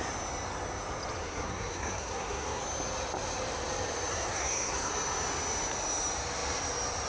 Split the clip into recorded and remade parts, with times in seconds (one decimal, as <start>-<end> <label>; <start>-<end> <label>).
0.0-1.2 recorded; 1.2-2.6 remade; 2.6-4.1 recorded; 4.1-4.9 remade; 4.9-7.1 recorded

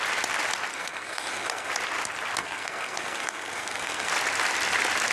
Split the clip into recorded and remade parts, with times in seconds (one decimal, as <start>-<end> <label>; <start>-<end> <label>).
0.0-0.7 recorded; 0.7-1.7 remade; 1.7-2.4 recorded; 2.4-4.1 remade; 4.1-5.1 recorded

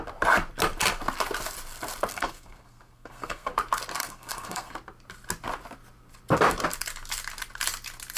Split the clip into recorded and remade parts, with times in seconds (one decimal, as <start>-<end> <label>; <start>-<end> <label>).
0.0-2.1 recorded; 2.1-3.5 remade; 3.5-4.0 recorded; 4.0-4.7 remade; 4.7-8.2 recorded

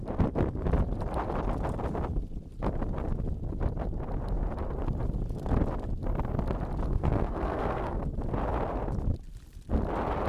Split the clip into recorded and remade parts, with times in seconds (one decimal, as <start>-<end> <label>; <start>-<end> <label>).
0.0-6.9 recorded; 6.9-8.0 remade; 8.0-10.3 recorded

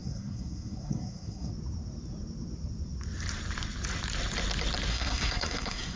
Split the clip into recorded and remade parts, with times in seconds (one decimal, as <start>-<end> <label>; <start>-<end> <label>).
0.0-1.5 remade; 1.5-4.9 recorded; 4.9-6.0 remade

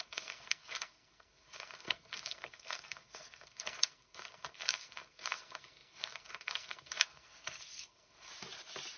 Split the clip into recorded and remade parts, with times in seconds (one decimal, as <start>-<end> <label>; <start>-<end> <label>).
0.0-8.3 remade; 8.3-9.0 recorded

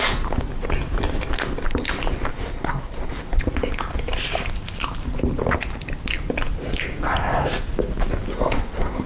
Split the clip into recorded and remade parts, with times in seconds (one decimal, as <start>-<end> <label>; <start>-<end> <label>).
0.0-2.3 recorded; 2.3-3.4 remade; 3.4-8.3 recorded; 8.3-9.1 remade